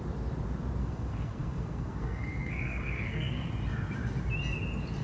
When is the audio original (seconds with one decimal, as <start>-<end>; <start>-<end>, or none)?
0.0-0.8; 3.5-5.0